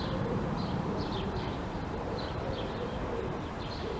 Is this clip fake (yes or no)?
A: yes